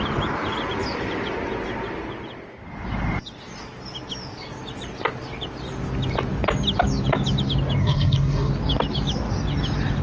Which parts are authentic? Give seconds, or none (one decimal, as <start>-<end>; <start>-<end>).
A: 0.0-7.8; 8.5-10.0